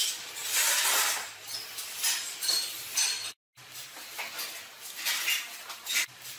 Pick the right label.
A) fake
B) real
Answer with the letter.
B